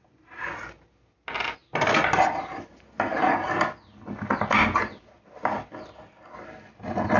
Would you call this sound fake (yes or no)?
no